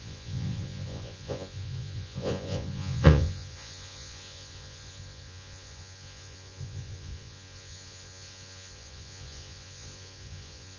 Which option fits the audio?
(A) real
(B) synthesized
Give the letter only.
B